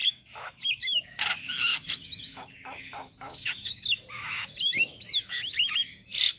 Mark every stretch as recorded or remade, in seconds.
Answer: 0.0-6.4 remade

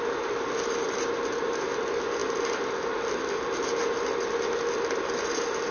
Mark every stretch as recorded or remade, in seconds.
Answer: 0.0-5.7 recorded

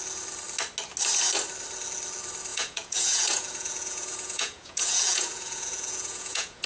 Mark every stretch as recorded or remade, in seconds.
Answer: 0.0-2.5 recorded; 2.5-6.7 remade

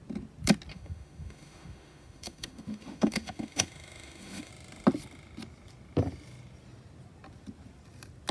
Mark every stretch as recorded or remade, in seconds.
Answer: 0.0-0.7 recorded; 0.7-4.5 remade; 4.5-8.3 recorded

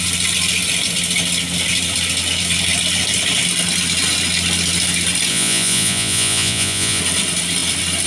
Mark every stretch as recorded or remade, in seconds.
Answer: 0.0-5.3 recorded; 5.3-7.0 remade; 7.0-8.1 recorded

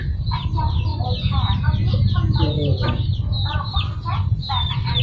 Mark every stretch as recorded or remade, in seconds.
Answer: 0.0-5.0 recorded

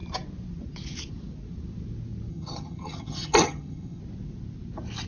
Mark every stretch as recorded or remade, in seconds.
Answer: 0.0-2.3 recorded; 2.3-4.0 remade; 4.0-5.1 recorded

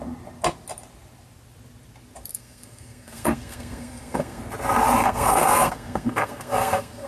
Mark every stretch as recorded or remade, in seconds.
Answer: 0.0-2.3 recorded; 2.3-4.4 remade; 4.4-5.0 recorded; 5.0-7.1 remade